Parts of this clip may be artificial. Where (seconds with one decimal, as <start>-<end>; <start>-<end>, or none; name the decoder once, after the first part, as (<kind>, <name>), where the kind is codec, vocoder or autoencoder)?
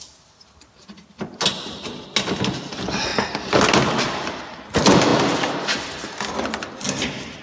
none